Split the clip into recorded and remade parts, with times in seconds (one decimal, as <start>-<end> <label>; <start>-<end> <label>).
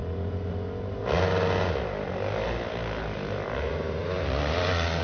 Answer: 0.0-4.0 recorded; 4.0-5.0 remade